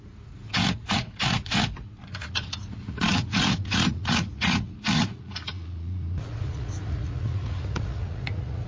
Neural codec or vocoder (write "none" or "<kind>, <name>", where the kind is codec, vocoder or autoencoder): vocoder, Vocos